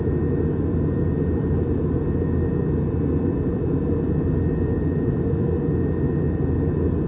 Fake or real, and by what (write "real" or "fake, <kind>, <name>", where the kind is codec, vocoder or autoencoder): real